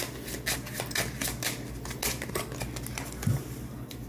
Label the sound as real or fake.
real